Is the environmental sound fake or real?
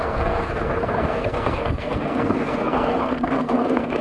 fake